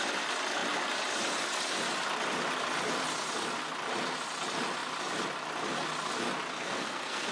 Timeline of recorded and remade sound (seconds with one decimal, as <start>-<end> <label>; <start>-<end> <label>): 0.0-6.5 recorded; 6.5-7.3 remade